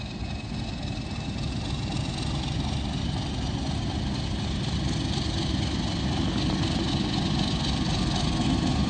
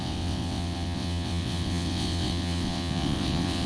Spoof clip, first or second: second